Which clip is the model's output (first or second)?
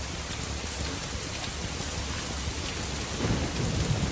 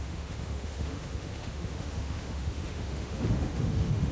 second